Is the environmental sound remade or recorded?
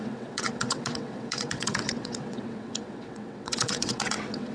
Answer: remade